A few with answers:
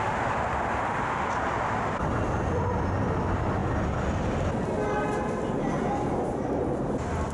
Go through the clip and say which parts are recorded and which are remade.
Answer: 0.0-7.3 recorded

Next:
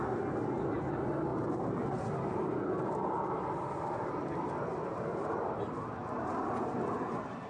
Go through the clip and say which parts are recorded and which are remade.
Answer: 0.0-7.5 recorded

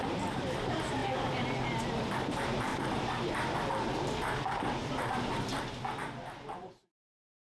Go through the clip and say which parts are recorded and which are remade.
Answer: 0.0-1.0 remade; 1.0-2.1 recorded; 2.1-2.7 remade; 2.7-5.0 recorded; 5.0-5.5 remade; 5.5-6.5 recorded; 6.5-7.4 remade